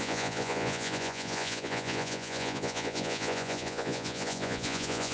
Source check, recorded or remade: remade